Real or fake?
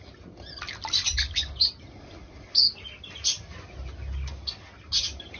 real